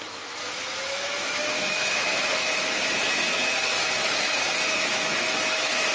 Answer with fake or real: fake